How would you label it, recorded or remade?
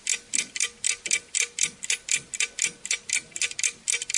recorded